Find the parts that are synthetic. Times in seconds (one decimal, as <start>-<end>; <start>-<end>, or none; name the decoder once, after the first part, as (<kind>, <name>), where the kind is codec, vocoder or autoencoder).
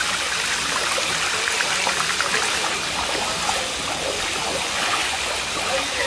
4.5-5.2 (vocoder, Vocos)